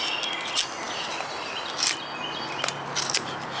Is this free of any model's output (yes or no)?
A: yes